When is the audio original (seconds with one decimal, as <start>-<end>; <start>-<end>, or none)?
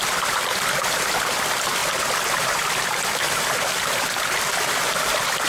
0.0-5.5